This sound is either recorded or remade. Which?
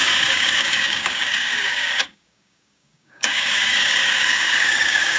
remade